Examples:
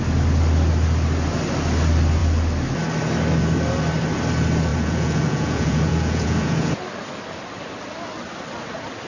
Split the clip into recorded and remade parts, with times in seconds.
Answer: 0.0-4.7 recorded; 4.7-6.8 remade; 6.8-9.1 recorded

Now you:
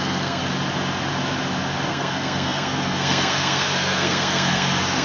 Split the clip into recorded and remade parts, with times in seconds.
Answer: 0.0-0.4 remade; 0.4-1.9 recorded; 1.9-5.0 remade

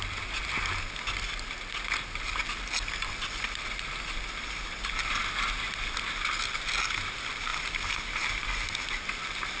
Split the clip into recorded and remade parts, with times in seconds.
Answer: 0.0-9.6 recorded